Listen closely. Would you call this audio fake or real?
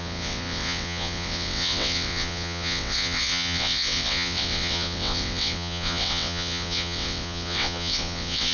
fake